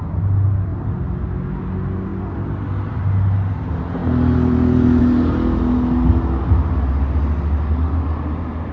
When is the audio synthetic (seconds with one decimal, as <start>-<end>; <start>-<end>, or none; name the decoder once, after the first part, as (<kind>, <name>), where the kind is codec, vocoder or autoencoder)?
none